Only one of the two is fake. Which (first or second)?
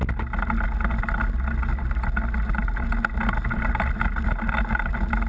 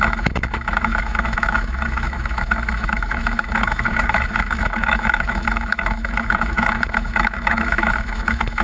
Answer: second